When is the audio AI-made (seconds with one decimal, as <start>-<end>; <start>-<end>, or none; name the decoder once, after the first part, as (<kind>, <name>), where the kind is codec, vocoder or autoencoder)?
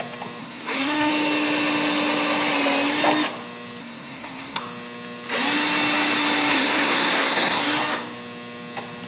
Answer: 0.4-1.1 (codec, SNAC); 3.8-4.6; 6.5-7.6